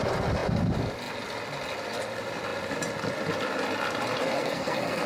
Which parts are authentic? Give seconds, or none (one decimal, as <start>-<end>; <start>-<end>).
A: 0.0-4.2